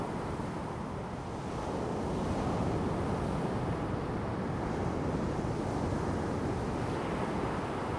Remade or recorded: recorded